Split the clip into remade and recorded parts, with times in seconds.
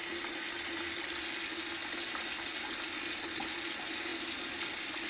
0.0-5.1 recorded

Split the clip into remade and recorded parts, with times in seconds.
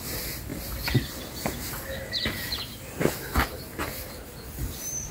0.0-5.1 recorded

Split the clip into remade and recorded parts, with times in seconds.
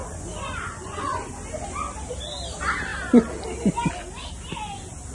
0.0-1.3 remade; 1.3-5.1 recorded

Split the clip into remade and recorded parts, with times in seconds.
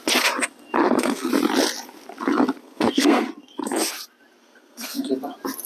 0.0-0.8 recorded; 0.8-1.3 remade; 1.3-2.6 recorded; 2.6-3.3 remade; 3.3-4.4 recorded; 4.4-5.1 remade; 5.1-5.7 recorded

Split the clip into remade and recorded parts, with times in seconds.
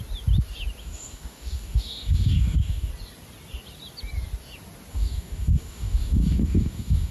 0.0-0.8 recorded; 0.8-2.9 remade; 2.9-4.9 recorded; 4.9-7.1 remade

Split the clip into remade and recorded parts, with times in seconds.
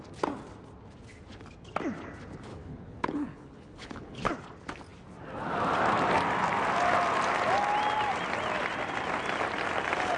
0.0-2.5 recorded; 2.5-4.3 remade; 4.3-10.2 recorded